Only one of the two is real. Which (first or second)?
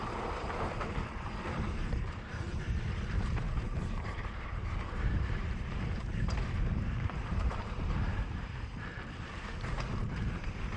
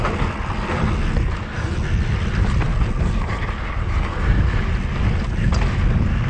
second